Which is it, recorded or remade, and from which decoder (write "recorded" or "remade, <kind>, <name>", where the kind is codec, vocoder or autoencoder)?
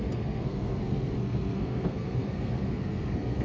remade, codec, SNAC